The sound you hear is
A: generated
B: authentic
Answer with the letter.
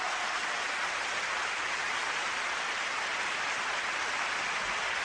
B